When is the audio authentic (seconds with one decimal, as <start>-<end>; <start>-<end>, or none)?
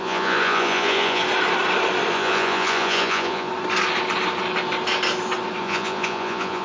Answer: 1.2-2.1; 3.5-5.6